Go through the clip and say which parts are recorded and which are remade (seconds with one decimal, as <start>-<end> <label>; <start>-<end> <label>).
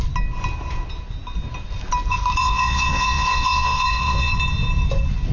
0.0-2.4 recorded; 2.4-4.3 remade; 4.3-5.3 recorded